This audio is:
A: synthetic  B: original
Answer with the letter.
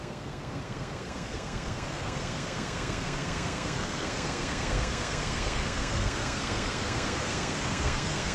A